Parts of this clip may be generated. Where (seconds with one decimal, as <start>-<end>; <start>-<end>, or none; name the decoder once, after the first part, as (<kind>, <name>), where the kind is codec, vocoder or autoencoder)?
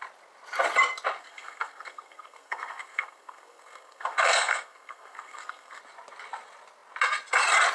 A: 1.2-5.8 (codec, SNAC)